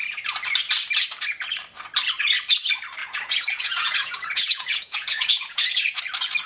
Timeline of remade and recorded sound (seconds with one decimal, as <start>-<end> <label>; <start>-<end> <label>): 0.0-3.0 recorded; 3.0-6.0 remade; 6.0-6.5 recorded